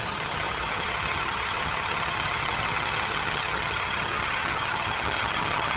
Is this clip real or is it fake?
fake